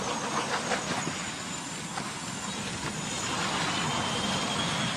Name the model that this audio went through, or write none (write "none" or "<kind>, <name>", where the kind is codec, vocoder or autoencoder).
none